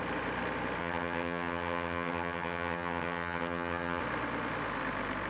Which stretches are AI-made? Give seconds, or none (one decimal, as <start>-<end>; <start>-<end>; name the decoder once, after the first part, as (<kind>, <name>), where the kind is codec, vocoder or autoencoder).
0.8-4.0 (vocoder, HiFi-GAN)